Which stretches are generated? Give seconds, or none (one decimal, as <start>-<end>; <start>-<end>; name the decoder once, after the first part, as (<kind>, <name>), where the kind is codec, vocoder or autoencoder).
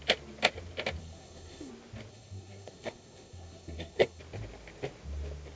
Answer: 1.0-1.7 (codec, SNAC); 2.1-4.2